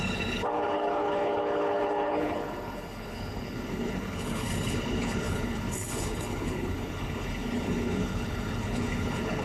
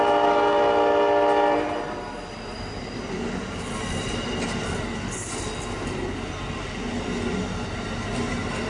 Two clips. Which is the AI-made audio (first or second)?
first